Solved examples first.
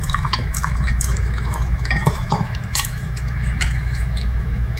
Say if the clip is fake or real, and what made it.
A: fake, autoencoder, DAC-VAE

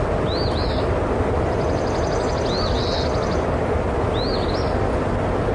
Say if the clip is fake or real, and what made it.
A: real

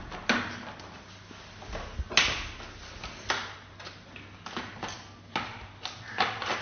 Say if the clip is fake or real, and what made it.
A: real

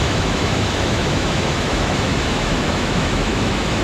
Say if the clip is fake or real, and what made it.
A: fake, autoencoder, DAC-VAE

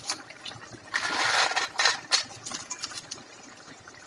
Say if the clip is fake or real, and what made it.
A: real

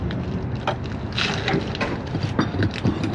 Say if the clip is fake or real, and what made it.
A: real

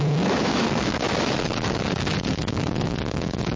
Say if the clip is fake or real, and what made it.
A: fake, autoencoder, DAC-VAE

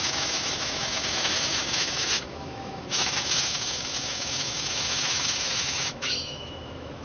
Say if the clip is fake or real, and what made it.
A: fake, autoencoder, DAC-VAE